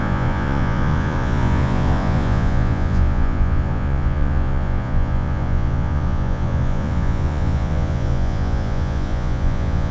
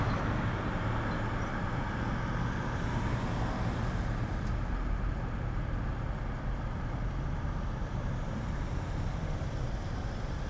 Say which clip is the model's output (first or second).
first